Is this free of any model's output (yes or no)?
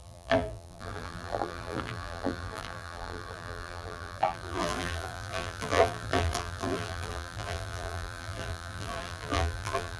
no